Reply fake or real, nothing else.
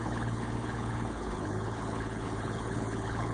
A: fake